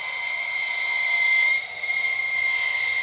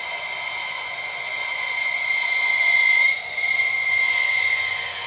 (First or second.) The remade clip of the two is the second